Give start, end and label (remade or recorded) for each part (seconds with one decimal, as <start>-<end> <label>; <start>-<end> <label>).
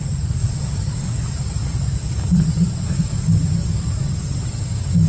0.0-5.1 recorded